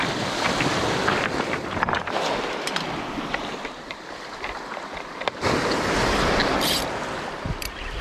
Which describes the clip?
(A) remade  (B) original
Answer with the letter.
A